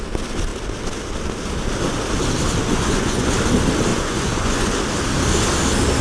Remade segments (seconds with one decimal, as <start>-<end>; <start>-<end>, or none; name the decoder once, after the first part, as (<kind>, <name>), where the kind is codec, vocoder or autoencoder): 2.6-3.3 (vocoder, Vocos); 3.9-4.7